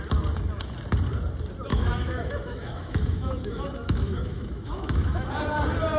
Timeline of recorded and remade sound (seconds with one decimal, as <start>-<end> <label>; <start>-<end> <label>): 0.0-1.7 recorded; 1.7-5.3 remade; 5.3-6.0 recorded